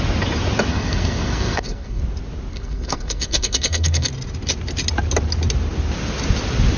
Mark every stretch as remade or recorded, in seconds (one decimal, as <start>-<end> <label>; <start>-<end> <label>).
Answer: 0.0-0.7 recorded; 0.7-2.0 remade; 2.0-2.5 recorded; 2.5-4.1 remade; 4.1-6.8 recorded